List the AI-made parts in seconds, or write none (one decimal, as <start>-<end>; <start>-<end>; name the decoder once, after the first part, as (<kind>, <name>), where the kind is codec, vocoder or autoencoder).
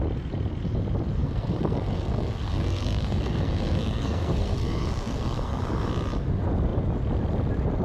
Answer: 1.2-5.9 (codec, SNAC)